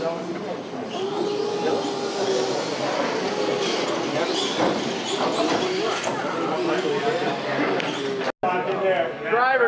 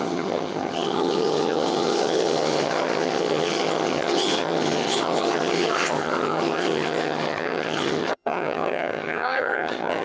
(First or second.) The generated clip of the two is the second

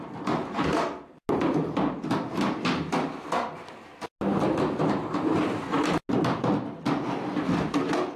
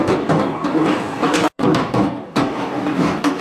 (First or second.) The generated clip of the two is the second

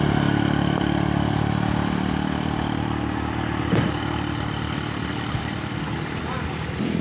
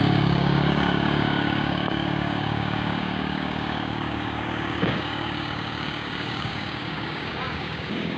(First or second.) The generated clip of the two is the second